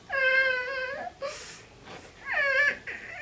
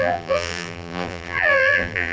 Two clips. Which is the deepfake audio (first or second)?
second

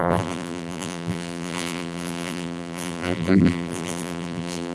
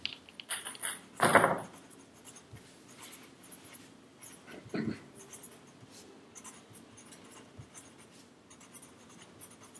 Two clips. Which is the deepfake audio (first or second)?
first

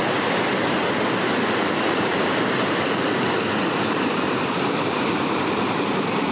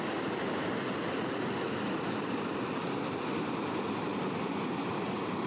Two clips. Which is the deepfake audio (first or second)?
first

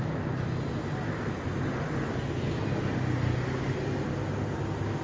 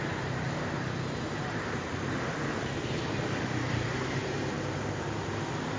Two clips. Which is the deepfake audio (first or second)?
second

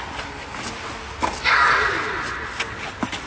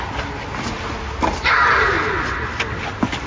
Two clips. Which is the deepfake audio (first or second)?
second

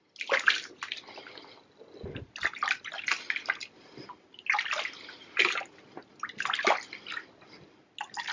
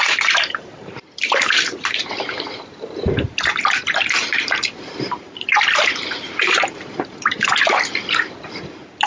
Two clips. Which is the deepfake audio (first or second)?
second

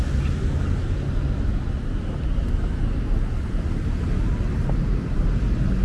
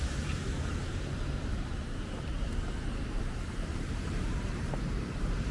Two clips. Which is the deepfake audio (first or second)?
second